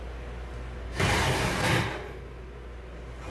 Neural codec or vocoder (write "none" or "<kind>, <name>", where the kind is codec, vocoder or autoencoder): none